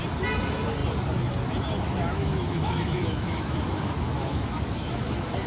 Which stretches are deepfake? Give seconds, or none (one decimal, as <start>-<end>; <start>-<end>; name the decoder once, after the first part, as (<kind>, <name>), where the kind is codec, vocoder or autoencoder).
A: 2.0-5.5 (autoencoder, DAC-VAE)